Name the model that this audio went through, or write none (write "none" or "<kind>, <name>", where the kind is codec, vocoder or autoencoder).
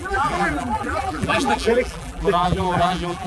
vocoder, BigVGAN v2